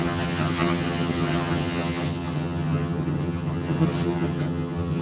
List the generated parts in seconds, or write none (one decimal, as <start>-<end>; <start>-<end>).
0.0-5.0